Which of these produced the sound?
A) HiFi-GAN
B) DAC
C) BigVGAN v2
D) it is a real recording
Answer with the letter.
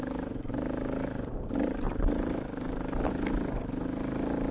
D